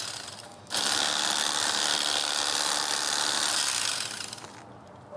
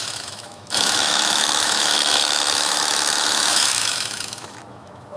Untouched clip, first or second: first